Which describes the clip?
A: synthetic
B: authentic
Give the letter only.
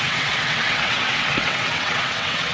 A